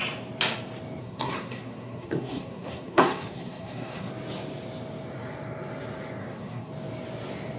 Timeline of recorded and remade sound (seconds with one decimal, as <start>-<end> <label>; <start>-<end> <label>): 0.0-1.0 recorded; 1.0-4.1 remade; 4.1-6.2 recorded; 6.2-6.7 remade; 6.7-7.6 recorded